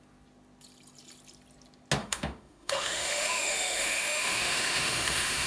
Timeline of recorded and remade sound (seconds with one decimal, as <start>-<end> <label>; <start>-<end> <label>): 0.0-2.0 recorded; 2.0-5.5 remade